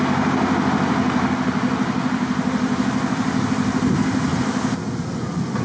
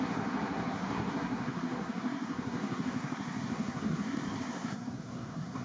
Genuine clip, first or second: first